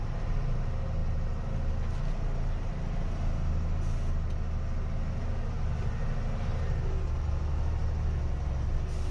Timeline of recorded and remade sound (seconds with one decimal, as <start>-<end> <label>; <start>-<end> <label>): 0.0-9.1 recorded